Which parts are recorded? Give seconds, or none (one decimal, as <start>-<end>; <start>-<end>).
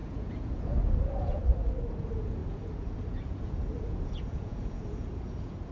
1.4-2.0